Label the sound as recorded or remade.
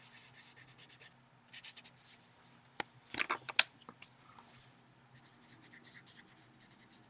recorded